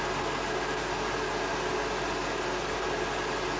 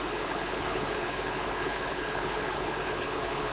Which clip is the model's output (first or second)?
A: second